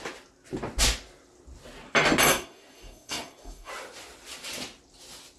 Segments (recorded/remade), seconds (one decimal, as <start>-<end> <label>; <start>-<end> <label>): 0.0-2.3 recorded; 2.3-3.7 remade; 3.7-5.4 recorded